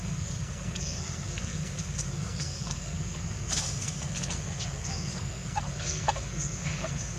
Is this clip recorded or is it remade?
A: remade